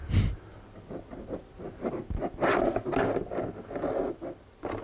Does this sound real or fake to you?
real